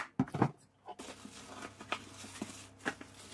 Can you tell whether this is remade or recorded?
recorded